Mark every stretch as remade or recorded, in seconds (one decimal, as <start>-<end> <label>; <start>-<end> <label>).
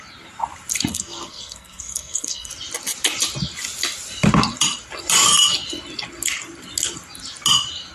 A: 0.0-0.9 recorded; 0.9-2.5 remade; 2.5-7.9 recorded